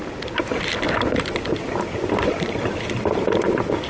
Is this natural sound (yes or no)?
yes